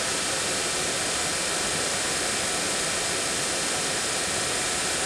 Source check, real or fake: real